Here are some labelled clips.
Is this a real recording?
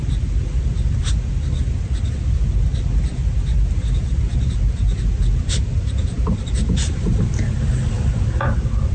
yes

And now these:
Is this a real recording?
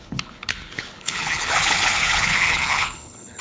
no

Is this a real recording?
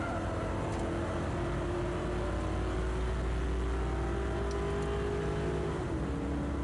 yes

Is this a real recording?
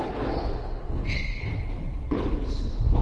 no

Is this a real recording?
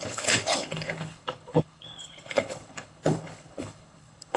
no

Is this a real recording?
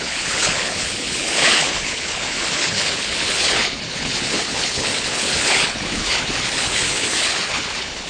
no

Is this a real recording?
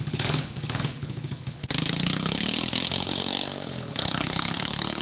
no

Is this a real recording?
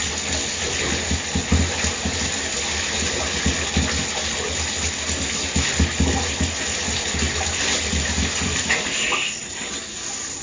yes